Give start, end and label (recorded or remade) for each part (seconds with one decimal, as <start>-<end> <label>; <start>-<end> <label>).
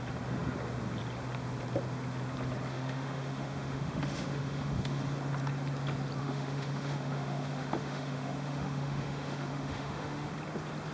0.0-2.7 recorded; 2.7-5.0 remade; 5.0-6.2 recorded; 6.2-10.3 remade; 10.3-10.9 recorded